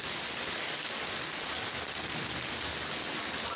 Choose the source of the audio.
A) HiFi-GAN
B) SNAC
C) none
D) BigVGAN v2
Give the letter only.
C